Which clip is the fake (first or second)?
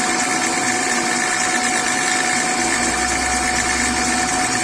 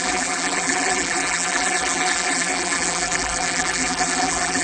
second